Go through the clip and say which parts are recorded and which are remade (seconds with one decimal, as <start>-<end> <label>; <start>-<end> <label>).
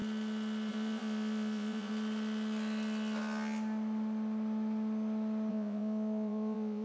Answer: 0.0-0.7 recorded; 0.7-1.9 remade; 1.9-5.5 recorded; 5.5-6.8 remade